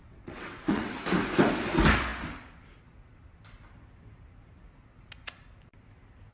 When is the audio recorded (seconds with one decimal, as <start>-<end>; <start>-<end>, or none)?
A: 1.0-6.3